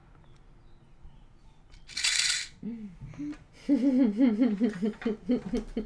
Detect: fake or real real